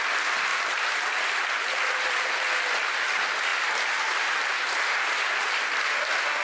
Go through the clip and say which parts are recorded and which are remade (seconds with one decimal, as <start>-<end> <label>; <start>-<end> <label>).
0.0-0.5 recorded; 0.5-2.3 remade; 2.3-6.4 recorded